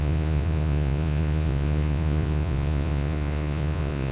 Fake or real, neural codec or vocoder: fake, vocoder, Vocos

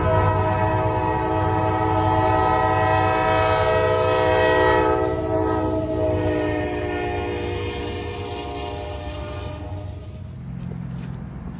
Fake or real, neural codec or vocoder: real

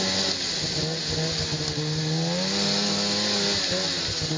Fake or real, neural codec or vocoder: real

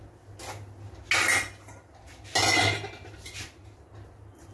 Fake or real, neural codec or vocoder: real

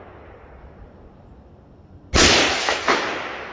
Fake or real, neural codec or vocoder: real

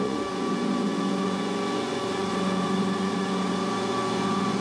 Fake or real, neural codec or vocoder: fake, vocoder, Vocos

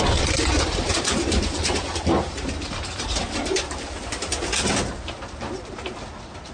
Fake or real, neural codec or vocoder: real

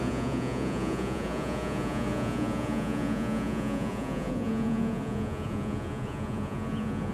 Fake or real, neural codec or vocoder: fake, vocoder, Vocos